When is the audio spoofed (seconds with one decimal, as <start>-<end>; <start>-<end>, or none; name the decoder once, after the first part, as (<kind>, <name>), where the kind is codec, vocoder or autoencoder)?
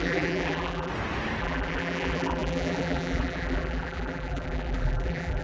0.0-0.9 (vocoder, BigVGAN v2); 1.4-5.4